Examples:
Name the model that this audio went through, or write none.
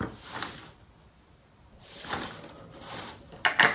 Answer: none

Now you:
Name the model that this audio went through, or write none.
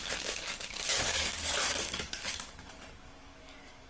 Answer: codec, DAC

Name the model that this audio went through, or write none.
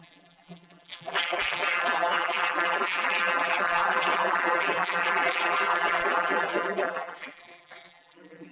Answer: vocoder, BigVGAN v2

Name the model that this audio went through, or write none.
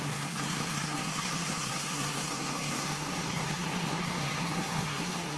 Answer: codec, SNAC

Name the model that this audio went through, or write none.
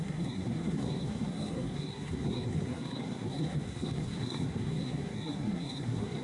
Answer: codec, SNAC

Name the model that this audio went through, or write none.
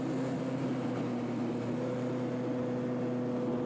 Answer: none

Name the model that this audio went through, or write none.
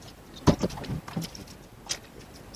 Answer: none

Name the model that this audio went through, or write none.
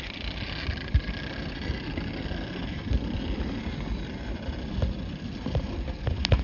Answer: vocoder, BigVGAN v2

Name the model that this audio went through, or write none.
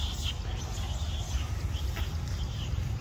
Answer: none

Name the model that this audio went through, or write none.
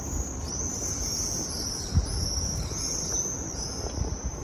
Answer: none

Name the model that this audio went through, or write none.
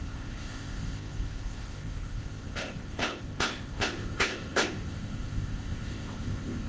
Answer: codec, ZipCodec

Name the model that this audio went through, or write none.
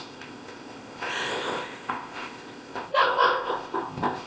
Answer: codec, ZipCodec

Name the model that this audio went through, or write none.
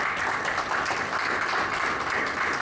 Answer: none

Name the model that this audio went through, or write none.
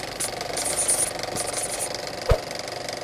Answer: none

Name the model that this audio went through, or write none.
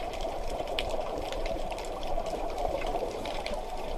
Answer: vocoder, BigVGAN v2